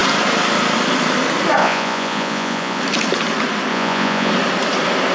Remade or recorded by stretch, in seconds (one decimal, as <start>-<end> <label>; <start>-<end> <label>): 0.0-1.6 recorded; 1.6-2.8 remade; 2.8-3.7 recorded; 3.7-4.3 remade; 4.3-5.1 recorded